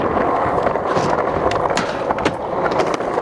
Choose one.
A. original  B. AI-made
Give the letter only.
B